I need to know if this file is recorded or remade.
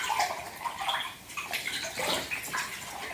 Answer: recorded